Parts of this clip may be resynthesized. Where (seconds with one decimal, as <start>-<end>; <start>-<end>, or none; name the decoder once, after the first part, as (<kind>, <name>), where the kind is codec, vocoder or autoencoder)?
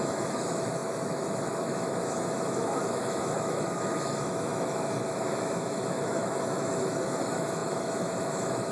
0.0-8.7 (autoencoder, DAC-VAE)